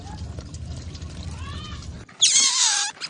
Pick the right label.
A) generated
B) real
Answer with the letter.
B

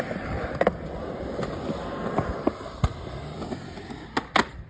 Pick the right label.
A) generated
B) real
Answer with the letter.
B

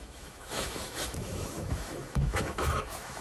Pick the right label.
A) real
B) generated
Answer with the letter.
B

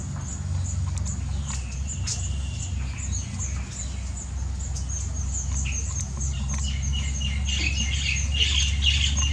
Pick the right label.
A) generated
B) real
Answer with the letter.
B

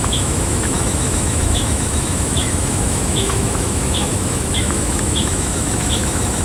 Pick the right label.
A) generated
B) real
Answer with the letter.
A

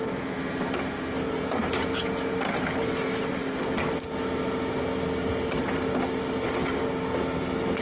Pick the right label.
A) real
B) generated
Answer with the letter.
A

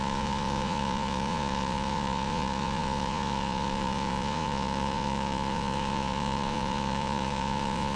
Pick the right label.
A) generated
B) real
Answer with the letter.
A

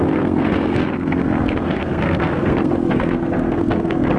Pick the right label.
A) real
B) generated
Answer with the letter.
B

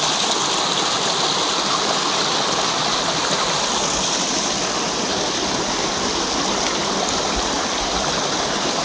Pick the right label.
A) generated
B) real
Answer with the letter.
B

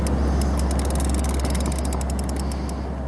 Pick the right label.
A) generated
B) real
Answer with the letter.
B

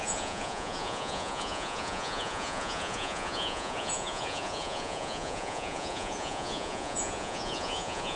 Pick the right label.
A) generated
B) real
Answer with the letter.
A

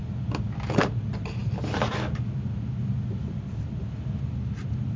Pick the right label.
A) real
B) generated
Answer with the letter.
A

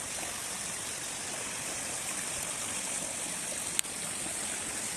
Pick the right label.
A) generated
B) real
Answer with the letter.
B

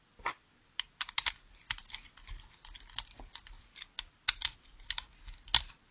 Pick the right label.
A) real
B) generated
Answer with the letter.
A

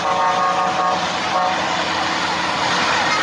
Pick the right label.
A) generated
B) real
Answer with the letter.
B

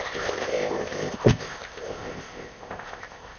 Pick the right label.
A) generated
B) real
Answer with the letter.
A